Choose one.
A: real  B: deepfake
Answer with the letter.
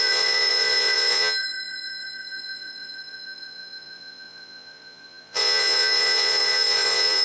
B